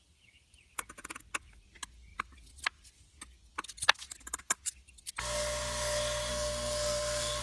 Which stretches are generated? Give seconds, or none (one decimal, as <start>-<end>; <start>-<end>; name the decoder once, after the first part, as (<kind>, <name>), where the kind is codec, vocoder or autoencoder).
6.3-7.4 (codec, SNAC)